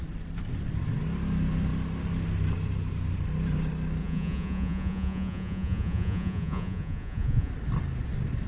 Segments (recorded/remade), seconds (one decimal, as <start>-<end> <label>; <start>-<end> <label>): 0.0-4.0 recorded; 4.0-7.5 remade; 7.5-8.5 recorded